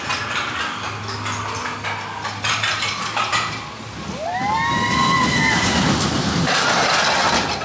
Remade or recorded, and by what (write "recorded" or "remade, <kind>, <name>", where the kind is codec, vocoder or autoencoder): recorded